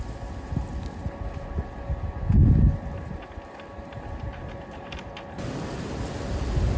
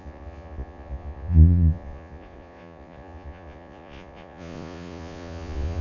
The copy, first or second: second